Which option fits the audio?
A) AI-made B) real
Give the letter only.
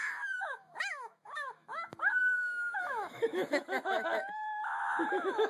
A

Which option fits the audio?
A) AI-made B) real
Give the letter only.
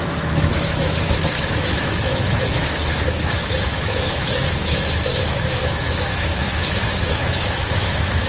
A